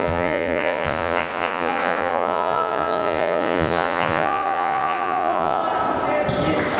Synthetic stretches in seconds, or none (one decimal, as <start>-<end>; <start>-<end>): 0.0-5.6

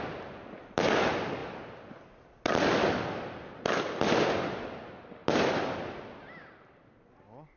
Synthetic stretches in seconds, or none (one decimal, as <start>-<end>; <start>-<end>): none

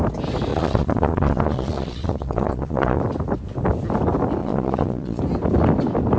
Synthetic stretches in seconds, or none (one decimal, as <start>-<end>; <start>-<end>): 0.5-3.0; 4.4-5.2

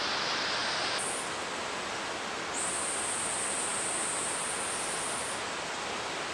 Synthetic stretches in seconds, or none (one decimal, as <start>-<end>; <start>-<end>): none

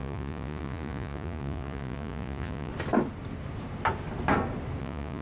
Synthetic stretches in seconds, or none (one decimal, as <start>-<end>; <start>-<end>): 0.0-2.7; 4.8-5.2

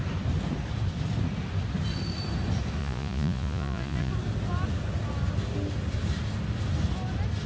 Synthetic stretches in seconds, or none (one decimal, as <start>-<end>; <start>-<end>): 2.8-4.1